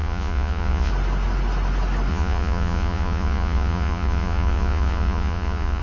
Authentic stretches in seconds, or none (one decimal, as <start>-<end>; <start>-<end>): 0.9-2.1